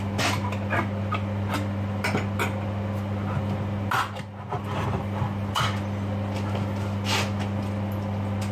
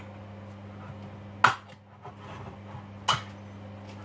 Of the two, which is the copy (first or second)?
first